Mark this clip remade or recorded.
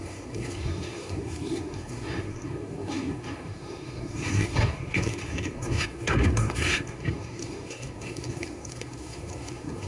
remade